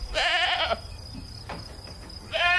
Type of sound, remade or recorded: recorded